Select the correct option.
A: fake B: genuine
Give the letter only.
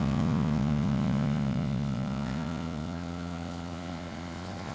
A